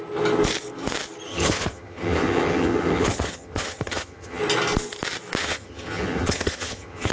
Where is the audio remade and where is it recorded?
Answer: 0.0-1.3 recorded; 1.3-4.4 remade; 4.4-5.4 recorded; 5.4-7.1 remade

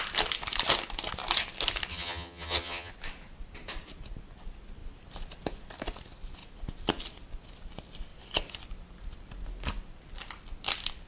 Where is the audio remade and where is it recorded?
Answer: 0.0-1.9 recorded; 1.9-2.9 remade; 2.9-11.1 recorded

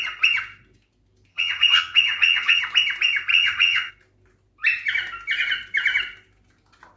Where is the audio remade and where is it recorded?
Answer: 0.0-1.3 recorded; 1.3-2.6 remade; 2.6-3.3 recorded; 3.3-3.9 remade; 3.9-7.0 recorded

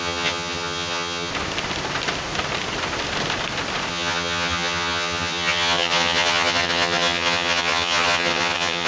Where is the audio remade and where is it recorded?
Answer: 0.0-1.3 remade; 1.3-3.9 recorded; 3.9-8.9 remade

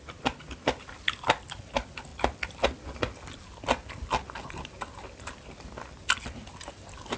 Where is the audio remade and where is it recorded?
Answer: 0.0-7.2 recorded

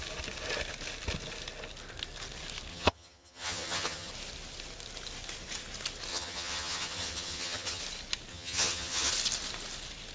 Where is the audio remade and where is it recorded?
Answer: 0.0-2.7 recorded; 2.7-4.1 remade; 4.1-6.1 recorded; 6.1-7.8 remade; 7.8-8.3 recorded; 8.3-9.1 remade; 9.1-10.1 recorded